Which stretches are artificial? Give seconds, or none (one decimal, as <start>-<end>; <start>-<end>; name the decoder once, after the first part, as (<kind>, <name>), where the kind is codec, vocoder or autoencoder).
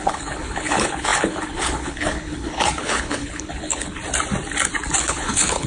0.0-4.0 (codec, HILCodec); 5.0-5.7